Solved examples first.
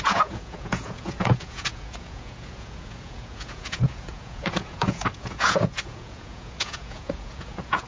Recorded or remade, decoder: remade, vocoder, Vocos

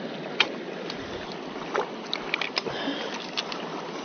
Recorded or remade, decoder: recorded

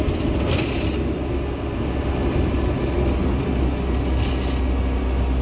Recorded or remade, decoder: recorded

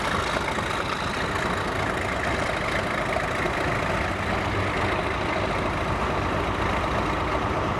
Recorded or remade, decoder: recorded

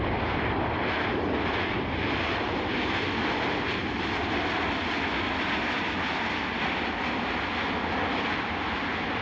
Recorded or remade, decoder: recorded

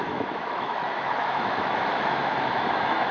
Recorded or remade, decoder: remade, autoencoder, DAC-VAE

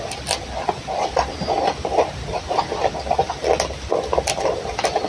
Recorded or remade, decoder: recorded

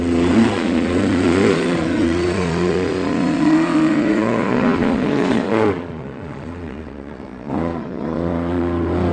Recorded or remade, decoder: remade, vocoder, Vocos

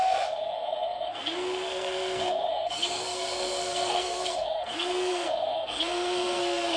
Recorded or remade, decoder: remade, codec, SNAC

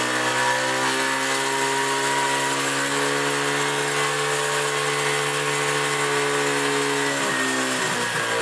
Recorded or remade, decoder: recorded